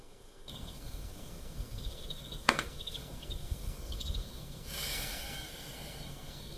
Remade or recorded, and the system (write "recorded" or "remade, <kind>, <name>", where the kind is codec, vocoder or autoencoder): remade, codec, SNAC